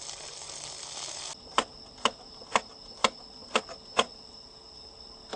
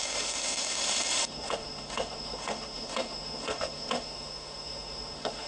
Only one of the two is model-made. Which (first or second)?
second